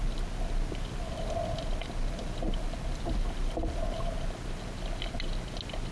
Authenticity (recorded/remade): recorded